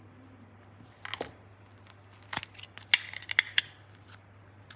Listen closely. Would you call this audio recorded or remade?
recorded